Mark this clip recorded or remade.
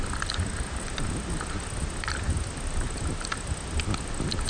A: recorded